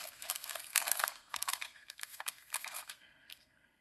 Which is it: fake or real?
fake